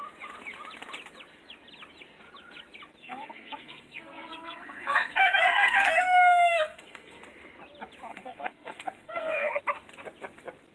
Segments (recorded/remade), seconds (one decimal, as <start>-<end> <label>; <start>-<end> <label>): 0.0-3.0 recorded; 3.0-7.2 remade; 7.2-8.1 recorded; 8.1-9.6 remade; 9.6-10.7 recorded